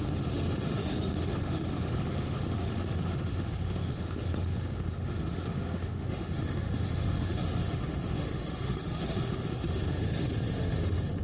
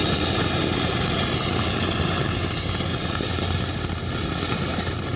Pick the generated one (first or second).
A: first